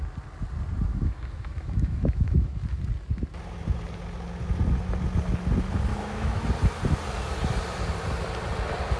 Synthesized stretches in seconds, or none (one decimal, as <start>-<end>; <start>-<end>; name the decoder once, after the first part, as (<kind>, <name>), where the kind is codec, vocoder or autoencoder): 0.9-2.8 (autoencoder, DAC-VAE); 5.9-6.5